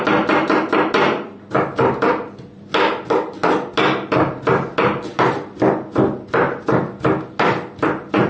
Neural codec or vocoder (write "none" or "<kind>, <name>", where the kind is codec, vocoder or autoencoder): none